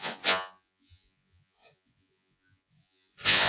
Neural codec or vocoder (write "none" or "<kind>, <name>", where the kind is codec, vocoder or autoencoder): vocoder, Vocos